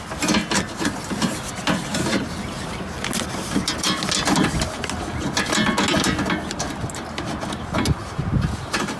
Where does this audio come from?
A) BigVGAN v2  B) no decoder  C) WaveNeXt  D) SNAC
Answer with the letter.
B